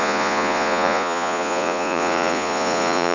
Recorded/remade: remade